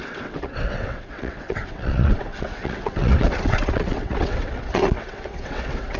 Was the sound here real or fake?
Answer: fake